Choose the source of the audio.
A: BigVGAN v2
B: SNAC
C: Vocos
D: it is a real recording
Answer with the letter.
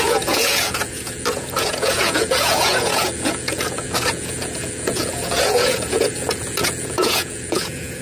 C